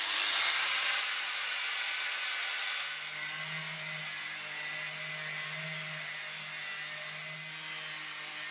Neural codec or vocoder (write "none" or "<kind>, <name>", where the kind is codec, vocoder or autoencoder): none